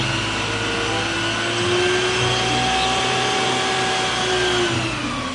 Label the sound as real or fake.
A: real